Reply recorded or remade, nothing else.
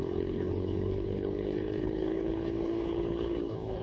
remade